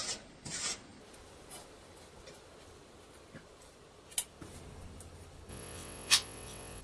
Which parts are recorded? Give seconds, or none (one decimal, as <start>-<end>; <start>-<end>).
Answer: 0.0-5.5